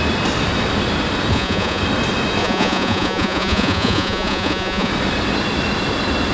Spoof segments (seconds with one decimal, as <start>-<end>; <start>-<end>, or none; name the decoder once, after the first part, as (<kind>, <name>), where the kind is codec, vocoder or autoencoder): 1.3-1.8 (vocoder, Vocos); 2.4-4.9